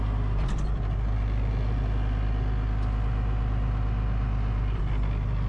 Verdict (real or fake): real